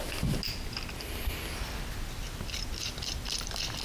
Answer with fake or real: real